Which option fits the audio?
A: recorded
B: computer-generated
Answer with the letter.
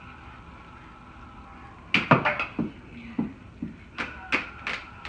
A